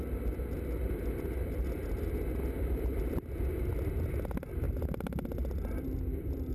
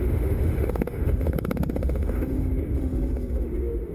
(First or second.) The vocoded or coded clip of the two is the second